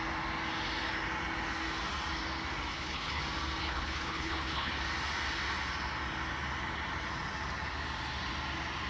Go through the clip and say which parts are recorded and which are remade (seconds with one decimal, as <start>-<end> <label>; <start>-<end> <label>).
0.0-2.7 recorded; 2.7-3.2 remade; 3.2-3.6 recorded; 3.6-4.7 remade; 4.7-8.9 recorded